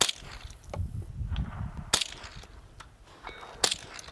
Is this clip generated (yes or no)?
no